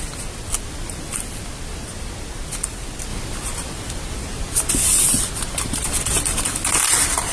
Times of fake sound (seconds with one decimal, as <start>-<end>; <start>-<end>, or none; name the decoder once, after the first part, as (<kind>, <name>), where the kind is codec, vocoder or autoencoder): none